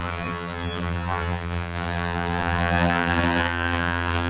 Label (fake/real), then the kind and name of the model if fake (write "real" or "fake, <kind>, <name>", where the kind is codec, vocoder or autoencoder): fake, vocoder, BigVGAN v2